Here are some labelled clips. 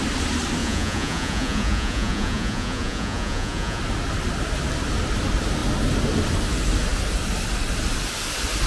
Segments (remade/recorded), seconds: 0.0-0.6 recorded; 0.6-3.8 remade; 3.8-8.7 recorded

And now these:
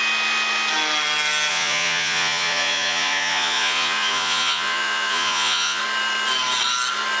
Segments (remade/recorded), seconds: 0.0-1.5 recorded; 1.5-5.8 remade; 5.8-7.2 recorded

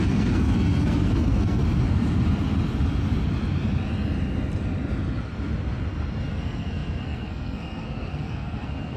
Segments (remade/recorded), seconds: 0.0-1.6 remade; 1.6-6.3 recorded; 6.3-9.0 remade

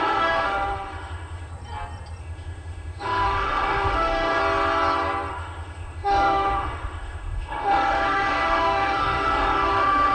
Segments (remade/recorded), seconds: 0.0-1.5 remade; 1.5-2.2 recorded; 2.2-4.4 remade; 4.4-5.3 recorded; 5.3-10.1 remade

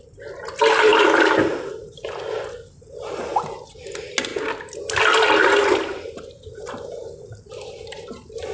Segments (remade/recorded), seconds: 0.0-5.4 recorded; 5.4-6.7 remade; 6.7-8.5 recorded

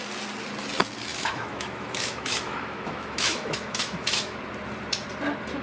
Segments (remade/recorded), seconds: 0.0-1.1 recorded; 1.1-4.4 remade; 4.4-5.6 recorded